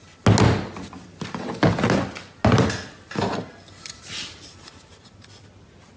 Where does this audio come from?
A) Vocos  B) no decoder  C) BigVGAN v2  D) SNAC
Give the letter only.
B